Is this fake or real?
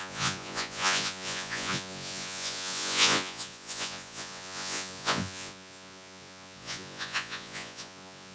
fake